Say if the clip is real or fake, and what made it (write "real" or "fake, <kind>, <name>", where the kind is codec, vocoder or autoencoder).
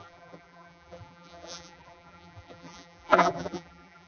fake, vocoder, BigVGAN v2